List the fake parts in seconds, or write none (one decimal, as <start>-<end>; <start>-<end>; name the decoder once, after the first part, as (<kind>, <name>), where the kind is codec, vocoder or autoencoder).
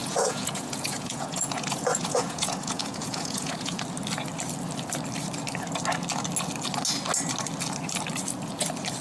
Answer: 0.0-3.8 (vocoder, Vocos)